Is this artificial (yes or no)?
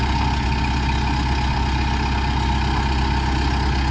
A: no